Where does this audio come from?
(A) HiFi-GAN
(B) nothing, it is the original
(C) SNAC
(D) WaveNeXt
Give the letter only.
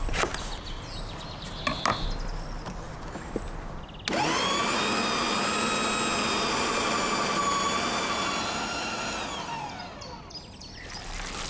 B